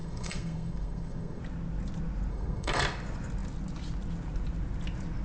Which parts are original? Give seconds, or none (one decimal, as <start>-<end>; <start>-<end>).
1.4-2.3; 2.8-5.2